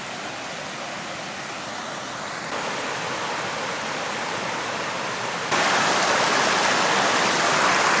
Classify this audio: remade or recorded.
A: recorded